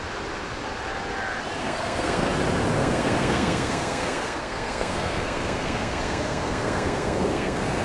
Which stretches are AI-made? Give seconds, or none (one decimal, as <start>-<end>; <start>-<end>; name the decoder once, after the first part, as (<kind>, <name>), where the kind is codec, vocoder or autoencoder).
1.6-2.3 (codec, SNAC); 2.8-7.8